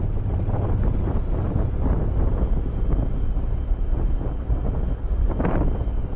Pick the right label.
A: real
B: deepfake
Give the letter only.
A